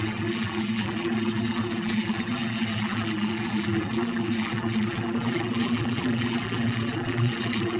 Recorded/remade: remade